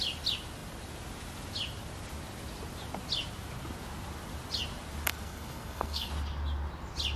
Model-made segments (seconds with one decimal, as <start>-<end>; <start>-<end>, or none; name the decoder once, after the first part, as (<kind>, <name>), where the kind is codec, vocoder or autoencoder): 5.1-6.1 (codec, SNAC)